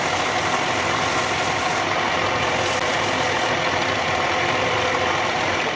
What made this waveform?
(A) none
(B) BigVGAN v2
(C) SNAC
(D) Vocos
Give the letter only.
A